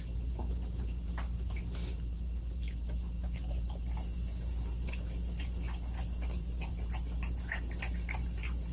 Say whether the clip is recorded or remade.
recorded